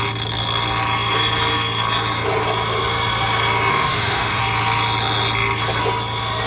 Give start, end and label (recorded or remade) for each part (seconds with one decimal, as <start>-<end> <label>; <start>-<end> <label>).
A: 0.0-3.7 recorded; 3.7-4.4 remade; 4.4-6.5 recorded